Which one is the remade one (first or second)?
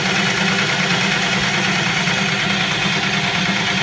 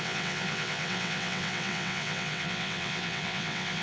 second